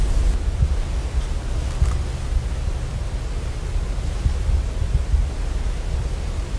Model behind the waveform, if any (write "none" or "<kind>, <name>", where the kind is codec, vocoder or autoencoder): none